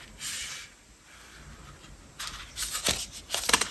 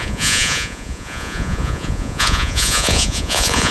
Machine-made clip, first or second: second